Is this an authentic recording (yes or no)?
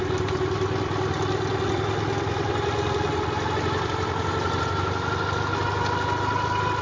yes